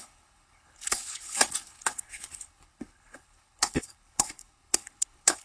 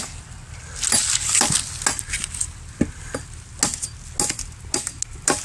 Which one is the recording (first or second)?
second